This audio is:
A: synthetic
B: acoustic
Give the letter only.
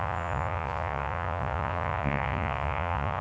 A